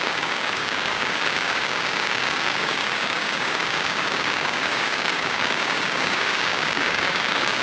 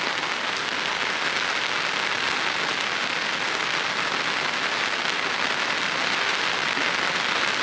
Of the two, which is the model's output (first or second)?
first